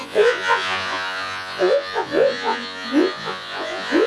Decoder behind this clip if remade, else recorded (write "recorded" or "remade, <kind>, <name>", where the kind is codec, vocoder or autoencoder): remade, vocoder, Vocos